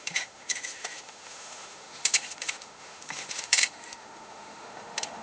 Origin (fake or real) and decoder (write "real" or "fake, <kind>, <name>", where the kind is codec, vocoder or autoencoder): fake, autoencoder, DAC-VAE